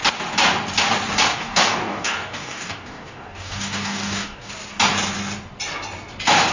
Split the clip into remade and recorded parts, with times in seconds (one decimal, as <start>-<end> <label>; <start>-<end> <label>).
0.0-1.3 recorded; 1.3-4.5 remade; 4.5-6.5 recorded